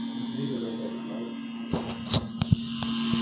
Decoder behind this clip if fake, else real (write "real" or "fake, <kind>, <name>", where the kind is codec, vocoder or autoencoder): real